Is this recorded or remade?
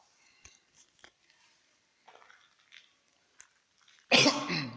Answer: recorded